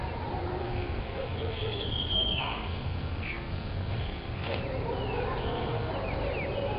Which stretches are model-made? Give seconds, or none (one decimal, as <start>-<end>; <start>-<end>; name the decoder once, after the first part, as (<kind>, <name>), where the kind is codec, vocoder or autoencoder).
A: 0.6-4.6 (codec, SNAC); 5.4-5.9